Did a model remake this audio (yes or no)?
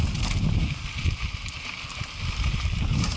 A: no